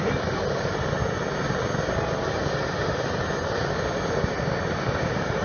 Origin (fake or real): real